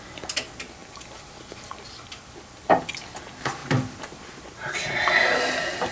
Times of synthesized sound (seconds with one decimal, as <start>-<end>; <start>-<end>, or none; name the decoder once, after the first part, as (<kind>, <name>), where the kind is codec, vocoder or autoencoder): none